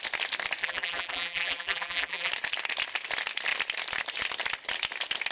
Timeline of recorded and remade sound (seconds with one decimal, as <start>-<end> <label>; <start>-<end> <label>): 0.0-0.6 recorded; 0.6-2.3 remade; 2.3-5.3 recorded